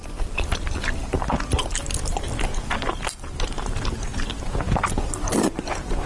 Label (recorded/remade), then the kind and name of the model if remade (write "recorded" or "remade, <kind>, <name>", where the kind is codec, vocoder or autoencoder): remade, vocoder, BigVGAN v2